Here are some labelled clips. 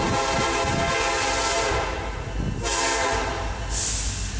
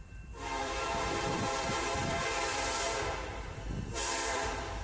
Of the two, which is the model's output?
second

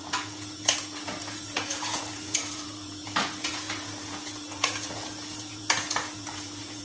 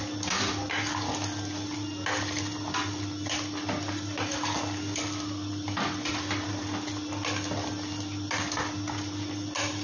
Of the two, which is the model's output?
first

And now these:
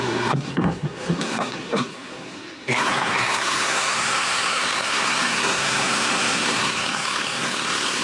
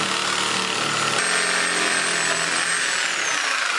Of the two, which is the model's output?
first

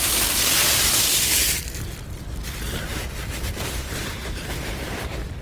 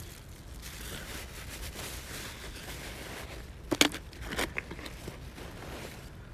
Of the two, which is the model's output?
first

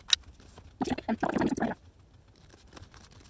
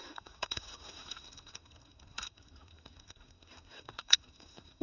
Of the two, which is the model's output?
second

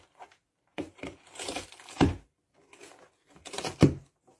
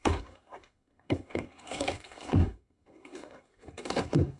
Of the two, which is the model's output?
second